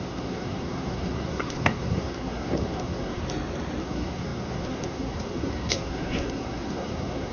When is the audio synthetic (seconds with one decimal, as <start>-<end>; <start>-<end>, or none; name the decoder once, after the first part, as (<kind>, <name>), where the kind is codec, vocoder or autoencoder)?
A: 0.0-3.2 (codec, SNAC); 3.8-7.3